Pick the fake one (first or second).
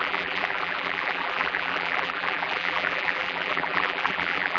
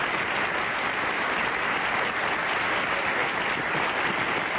first